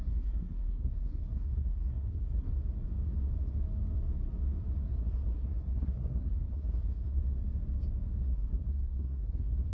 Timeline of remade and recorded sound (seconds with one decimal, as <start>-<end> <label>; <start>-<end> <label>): 0.0-2.5 remade; 2.5-5.0 recorded; 5.0-7.2 remade; 7.2-8.2 recorded; 8.2-9.7 remade